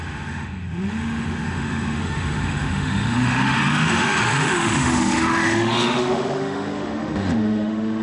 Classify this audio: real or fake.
fake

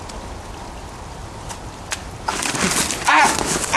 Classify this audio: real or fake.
real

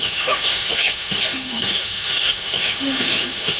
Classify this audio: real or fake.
fake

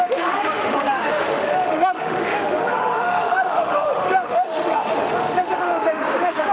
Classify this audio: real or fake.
fake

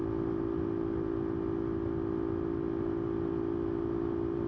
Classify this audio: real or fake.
real